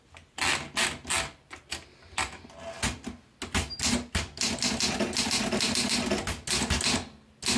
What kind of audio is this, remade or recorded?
recorded